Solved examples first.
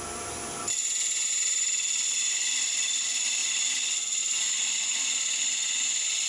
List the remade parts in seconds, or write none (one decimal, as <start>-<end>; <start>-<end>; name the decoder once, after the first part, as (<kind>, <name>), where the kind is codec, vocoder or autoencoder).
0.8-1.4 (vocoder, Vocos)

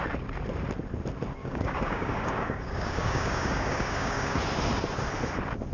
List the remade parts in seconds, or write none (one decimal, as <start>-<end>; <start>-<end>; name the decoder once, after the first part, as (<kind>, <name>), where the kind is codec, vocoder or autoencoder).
1.4-4.4 (codec, DAC)

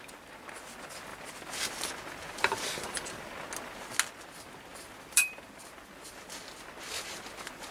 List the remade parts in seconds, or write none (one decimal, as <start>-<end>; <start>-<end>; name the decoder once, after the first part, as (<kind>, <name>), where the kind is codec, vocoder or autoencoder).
4.7-6.2 (vocoder, BigVGAN v2)

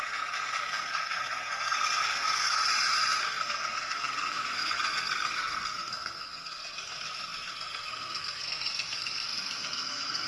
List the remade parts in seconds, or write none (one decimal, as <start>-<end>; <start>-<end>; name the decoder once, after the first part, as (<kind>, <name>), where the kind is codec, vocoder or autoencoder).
0.0-2.6 (codec, SNAC); 3.2-10.3